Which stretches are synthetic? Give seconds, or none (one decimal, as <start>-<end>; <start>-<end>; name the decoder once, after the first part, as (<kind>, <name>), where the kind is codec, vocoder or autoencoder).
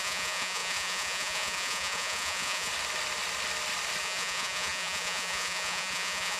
0.0-2.7 (vocoder, Vocos); 4.0-6.4